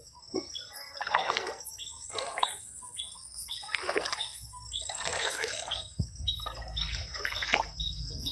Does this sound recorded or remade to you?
remade